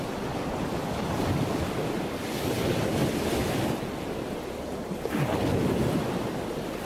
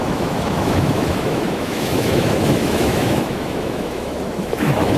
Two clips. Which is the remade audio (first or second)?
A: second